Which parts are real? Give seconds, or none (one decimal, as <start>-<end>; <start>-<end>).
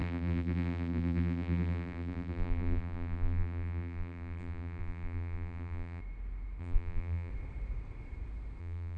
6.0-6.6; 7.3-8.6